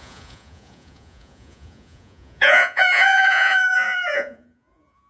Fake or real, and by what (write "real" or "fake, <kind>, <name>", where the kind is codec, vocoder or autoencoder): fake, vocoder, Vocos